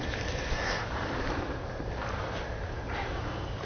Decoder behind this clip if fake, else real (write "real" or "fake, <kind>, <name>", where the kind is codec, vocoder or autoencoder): fake, vocoder, BigVGAN v2